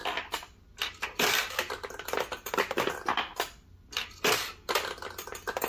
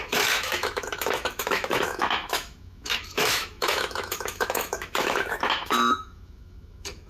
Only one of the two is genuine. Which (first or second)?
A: first